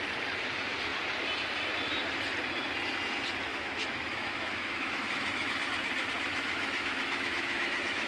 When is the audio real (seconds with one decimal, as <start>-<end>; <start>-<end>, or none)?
0.0-3.5; 5.5-6.3